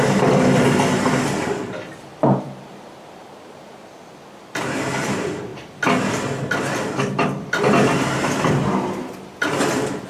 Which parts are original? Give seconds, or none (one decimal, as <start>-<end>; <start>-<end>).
0.0-10.1